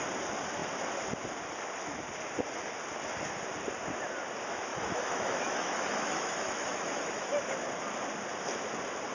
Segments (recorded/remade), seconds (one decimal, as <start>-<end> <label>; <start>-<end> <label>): 0.0-4.7 recorded; 4.7-7.5 remade; 7.5-9.1 recorded